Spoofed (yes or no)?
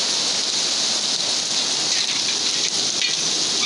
no